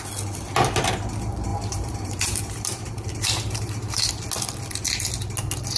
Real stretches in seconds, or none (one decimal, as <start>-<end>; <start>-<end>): 0.0-1.5; 4.1-5.8